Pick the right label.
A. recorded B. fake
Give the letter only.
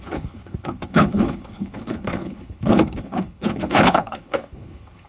B